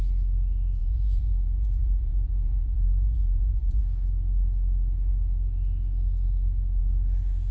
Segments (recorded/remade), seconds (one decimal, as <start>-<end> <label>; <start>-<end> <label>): 0.0-0.8 recorded; 0.8-3.8 remade; 3.8-7.5 recorded